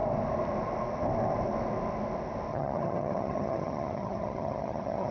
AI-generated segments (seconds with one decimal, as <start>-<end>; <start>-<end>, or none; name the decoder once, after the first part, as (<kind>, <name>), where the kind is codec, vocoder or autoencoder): 2.5-5.1 (vocoder, HiFi-GAN)